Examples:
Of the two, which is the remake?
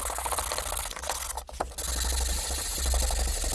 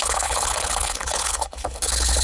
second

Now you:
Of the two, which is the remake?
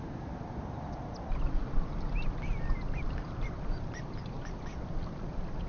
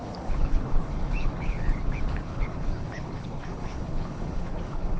second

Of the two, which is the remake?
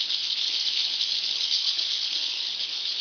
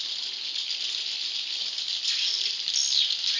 first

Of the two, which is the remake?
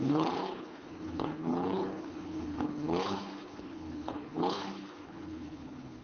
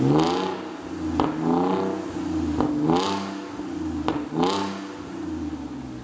first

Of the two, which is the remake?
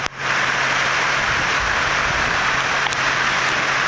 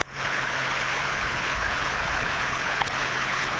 second